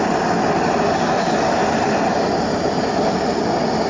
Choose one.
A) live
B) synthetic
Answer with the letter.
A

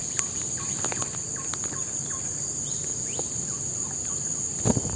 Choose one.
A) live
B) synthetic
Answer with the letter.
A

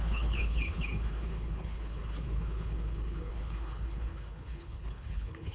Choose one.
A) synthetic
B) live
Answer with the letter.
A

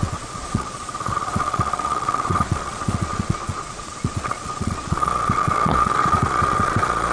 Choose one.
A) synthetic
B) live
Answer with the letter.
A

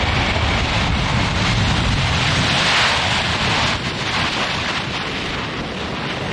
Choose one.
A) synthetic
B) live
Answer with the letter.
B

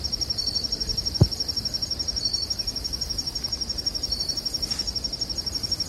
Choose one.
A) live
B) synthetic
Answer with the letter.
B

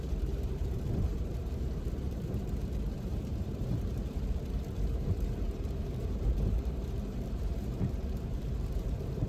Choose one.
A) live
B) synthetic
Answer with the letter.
B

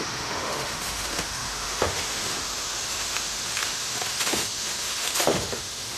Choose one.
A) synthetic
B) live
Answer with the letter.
A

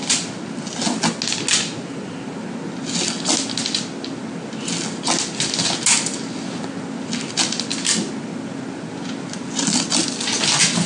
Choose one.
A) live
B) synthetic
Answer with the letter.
A